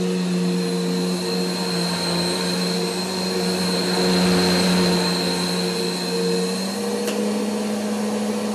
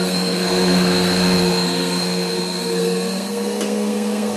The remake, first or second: second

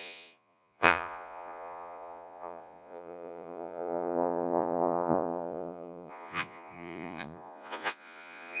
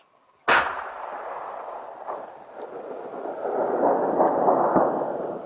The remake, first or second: first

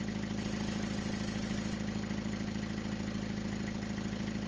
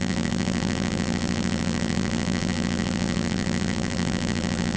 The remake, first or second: second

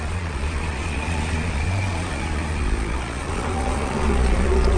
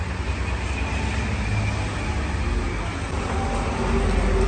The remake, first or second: first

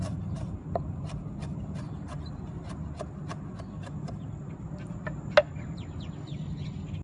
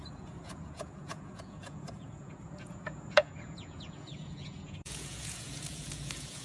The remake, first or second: second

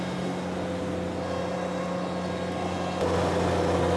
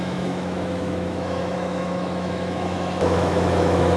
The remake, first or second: second